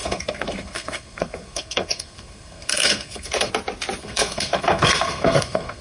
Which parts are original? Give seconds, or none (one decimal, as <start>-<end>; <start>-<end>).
3.5-4.0